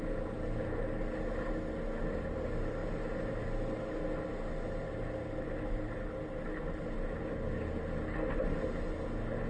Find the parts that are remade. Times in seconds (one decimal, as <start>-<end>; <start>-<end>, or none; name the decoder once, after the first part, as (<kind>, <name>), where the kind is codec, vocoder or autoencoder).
none